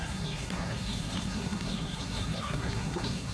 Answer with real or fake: fake